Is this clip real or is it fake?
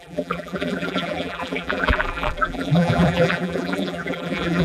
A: fake